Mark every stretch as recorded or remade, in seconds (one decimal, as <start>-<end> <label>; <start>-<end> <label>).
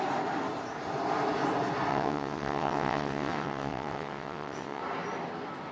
0.0-1.9 recorded; 1.9-4.8 remade; 4.8-5.7 recorded